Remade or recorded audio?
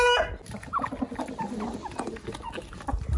recorded